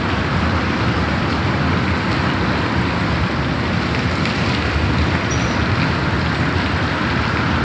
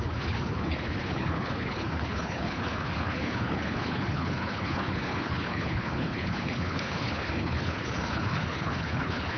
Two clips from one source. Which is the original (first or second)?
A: first